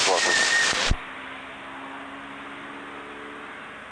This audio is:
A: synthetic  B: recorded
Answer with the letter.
B